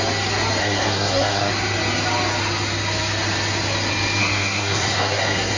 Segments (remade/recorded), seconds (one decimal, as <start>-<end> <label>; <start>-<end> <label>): 0.0-0.6 recorded; 0.6-1.5 remade; 1.5-4.2 recorded; 4.2-5.6 remade